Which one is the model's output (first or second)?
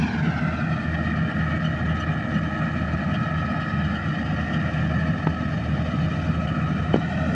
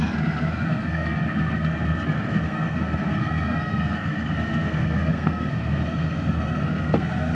second